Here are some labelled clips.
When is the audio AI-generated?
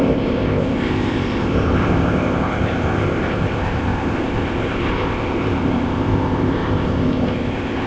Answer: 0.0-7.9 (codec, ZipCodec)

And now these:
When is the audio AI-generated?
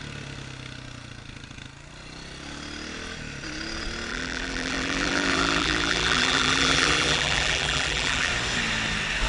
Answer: 4.1-8.3 (vocoder, BigVGAN v2)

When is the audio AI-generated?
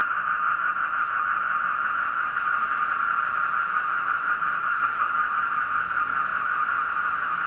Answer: 4.6-5.1 (codec, SNAC)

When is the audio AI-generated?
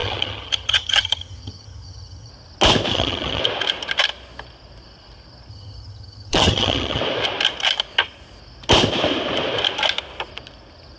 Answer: 0.0-2.3 (vocoder, HiFi-GAN); 2.9-3.4; 5.5-7.0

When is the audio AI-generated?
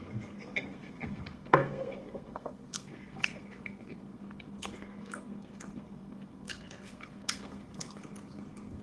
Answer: 0.0-8.8 (codec, SNAC)